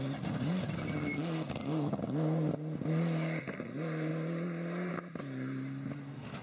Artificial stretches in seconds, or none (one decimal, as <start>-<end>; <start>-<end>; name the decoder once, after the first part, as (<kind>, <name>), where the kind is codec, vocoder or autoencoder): none